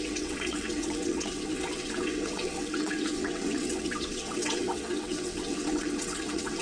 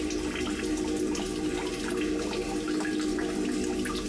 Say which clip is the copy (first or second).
first